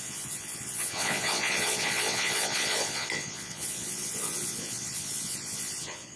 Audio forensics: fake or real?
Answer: fake